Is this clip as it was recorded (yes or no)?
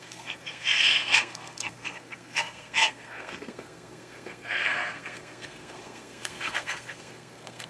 no